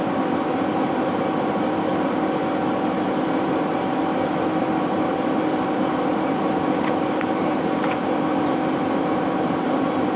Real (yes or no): no